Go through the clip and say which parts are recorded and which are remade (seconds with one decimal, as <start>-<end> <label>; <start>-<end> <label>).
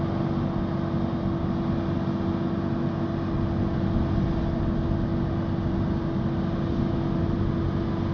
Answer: 0.0-8.1 recorded